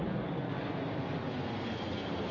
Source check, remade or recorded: recorded